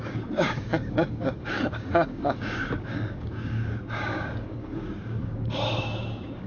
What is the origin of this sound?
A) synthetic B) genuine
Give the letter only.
A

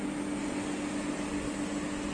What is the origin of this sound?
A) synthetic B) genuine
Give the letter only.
B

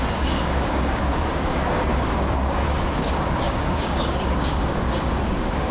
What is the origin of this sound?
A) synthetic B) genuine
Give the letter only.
A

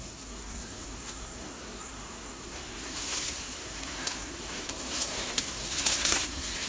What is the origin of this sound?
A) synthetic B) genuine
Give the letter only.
A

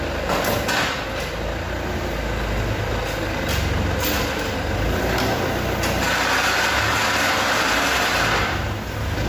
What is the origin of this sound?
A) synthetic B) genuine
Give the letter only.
B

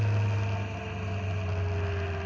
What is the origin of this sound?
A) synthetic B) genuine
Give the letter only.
B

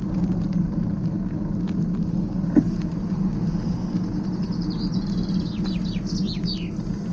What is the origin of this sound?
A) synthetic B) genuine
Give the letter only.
B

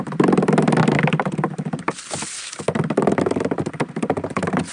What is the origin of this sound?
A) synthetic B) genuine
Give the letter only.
B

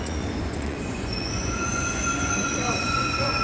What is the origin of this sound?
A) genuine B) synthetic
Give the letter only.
B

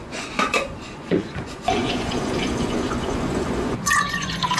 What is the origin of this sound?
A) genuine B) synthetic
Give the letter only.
B